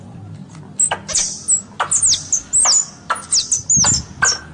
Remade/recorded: recorded